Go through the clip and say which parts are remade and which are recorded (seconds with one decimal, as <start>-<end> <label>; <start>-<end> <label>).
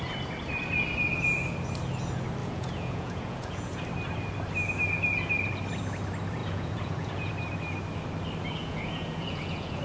0.0-2.4 recorded; 2.4-3.8 remade; 3.8-6.4 recorded; 6.4-7.3 remade; 7.3-8.6 recorded; 8.6-9.8 remade